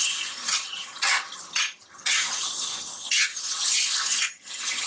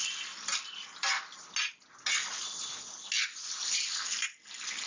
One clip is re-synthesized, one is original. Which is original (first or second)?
second